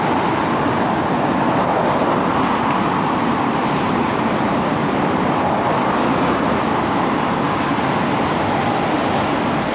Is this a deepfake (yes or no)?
no